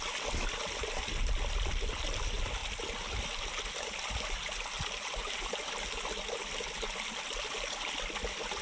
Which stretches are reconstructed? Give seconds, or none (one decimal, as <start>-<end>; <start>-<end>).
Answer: none